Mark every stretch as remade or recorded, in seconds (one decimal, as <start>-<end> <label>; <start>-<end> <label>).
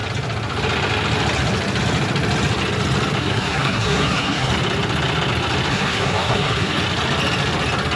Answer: 0.0-3.2 recorded; 3.2-4.5 remade; 4.5-5.7 recorded; 5.7-6.8 remade; 6.8-8.0 recorded